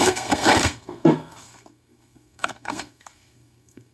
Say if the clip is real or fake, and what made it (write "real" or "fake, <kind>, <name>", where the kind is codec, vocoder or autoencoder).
fake, codec, SNAC